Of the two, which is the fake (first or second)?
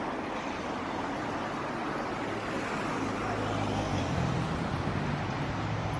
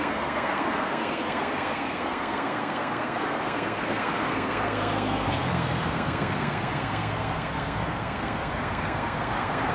second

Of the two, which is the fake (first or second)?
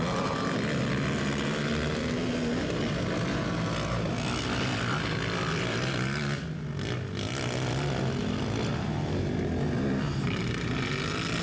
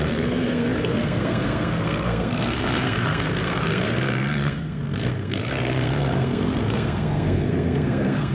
second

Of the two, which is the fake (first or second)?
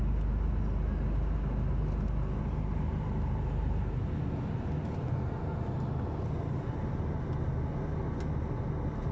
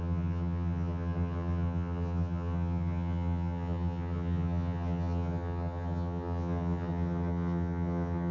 second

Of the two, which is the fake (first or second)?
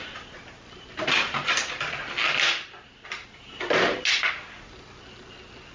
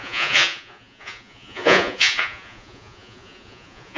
second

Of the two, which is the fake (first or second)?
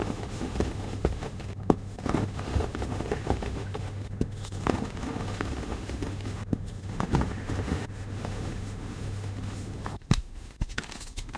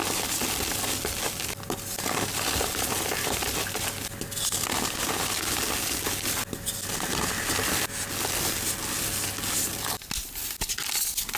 first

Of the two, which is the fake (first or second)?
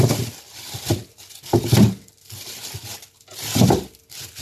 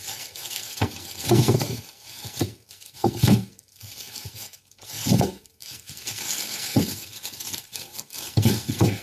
second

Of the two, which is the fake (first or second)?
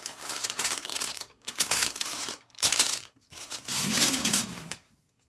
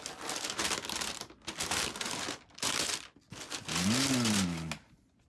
first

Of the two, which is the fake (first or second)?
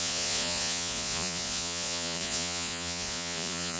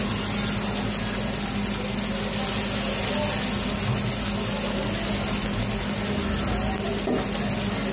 first